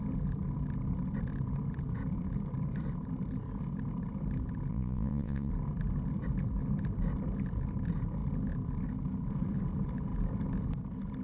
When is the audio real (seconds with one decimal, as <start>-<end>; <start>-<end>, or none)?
0.0-4.7; 5.5-11.2